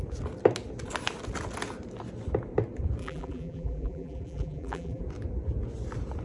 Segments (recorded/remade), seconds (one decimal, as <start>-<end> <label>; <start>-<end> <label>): 0.0-3.0 recorded; 3.0-5.0 remade; 5.0-6.2 recorded